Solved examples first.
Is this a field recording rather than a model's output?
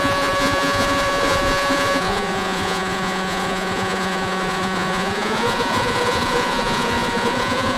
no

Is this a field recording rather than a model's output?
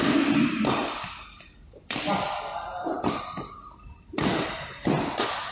yes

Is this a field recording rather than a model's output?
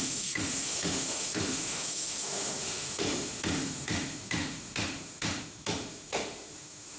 no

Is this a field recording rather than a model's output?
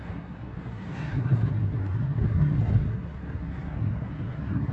no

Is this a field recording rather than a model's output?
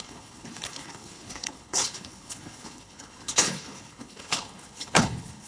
no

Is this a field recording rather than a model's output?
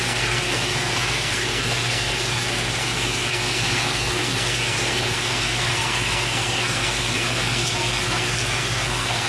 no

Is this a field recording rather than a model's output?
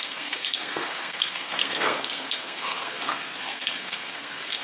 no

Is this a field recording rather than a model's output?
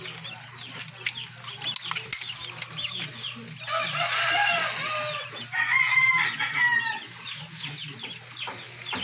yes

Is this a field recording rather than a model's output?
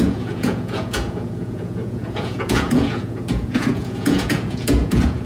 no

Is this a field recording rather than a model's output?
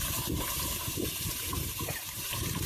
no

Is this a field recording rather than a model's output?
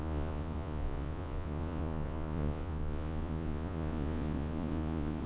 no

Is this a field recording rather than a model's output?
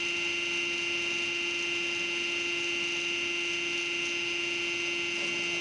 yes